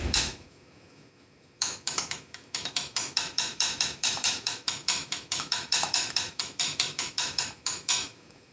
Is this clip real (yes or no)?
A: no